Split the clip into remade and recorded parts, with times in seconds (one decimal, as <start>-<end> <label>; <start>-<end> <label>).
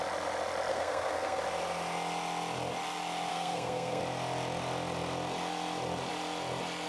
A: 0.0-0.7 recorded; 0.7-1.4 remade; 1.4-3.3 recorded; 3.3-4.0 remade; 4.0-6.9 recorded